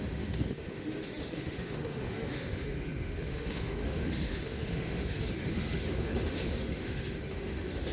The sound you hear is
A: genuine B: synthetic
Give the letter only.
B